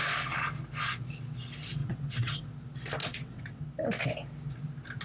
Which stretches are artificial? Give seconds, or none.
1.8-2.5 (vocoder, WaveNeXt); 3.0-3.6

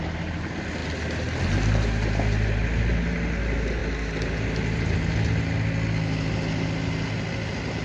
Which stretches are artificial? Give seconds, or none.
none

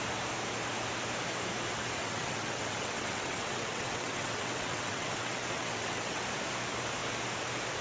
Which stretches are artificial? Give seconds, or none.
2.0-6.2 (vocoder, WaveNeXt)

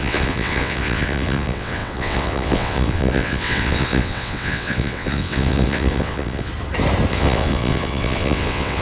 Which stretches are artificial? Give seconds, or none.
0.0-6.5 (vocoder, WaveNeXt); 7.1-8.8